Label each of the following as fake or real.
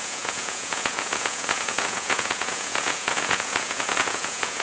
fake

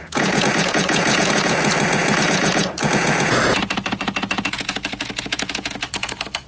fake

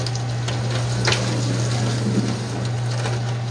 real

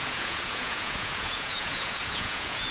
fake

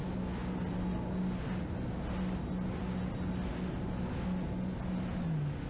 real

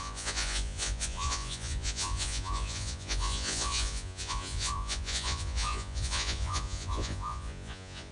fake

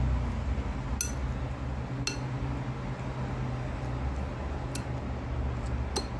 real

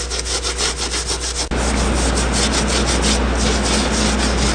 real